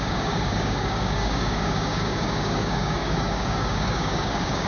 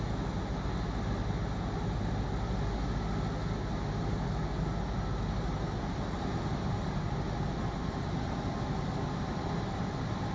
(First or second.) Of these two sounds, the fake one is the first